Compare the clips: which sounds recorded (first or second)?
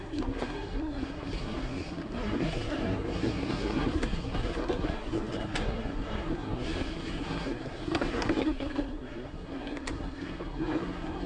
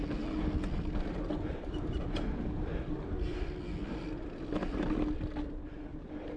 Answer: second